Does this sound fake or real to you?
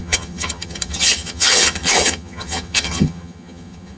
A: fake